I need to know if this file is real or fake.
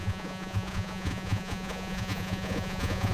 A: fake